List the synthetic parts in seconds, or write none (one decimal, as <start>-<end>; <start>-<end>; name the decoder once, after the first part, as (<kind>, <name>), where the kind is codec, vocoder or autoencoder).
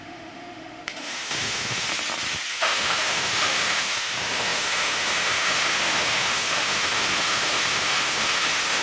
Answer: 0.0-1.9 (autoencoder, DAC-VAE); 2.5-8.8